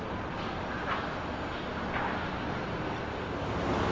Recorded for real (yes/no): yes